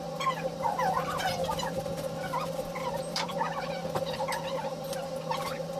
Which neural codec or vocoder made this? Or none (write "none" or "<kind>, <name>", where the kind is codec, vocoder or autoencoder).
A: vocoder, BigVGAN v2